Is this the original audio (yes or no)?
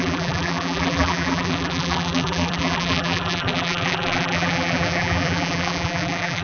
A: no